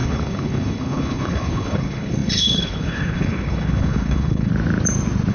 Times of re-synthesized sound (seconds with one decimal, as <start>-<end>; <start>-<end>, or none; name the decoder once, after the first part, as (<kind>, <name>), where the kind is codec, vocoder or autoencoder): 0.0-4.5 (codec, HILCodec)